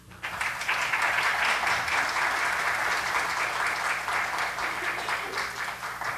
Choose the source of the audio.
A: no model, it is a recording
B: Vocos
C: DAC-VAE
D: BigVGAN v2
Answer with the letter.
A